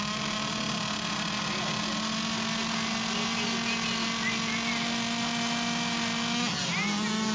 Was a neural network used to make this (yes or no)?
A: no